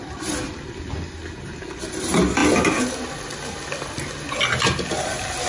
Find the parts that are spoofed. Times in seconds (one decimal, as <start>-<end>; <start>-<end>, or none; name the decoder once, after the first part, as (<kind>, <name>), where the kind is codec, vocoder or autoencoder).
none